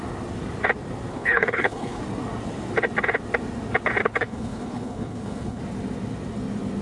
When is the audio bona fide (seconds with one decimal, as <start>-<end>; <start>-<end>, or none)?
0.0-1.1; 2.0-4.0; 5.6-6.8